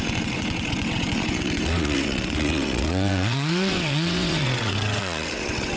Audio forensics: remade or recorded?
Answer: remade